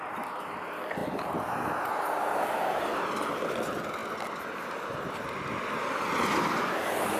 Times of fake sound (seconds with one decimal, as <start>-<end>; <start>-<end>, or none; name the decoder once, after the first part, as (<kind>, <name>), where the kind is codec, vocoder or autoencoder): none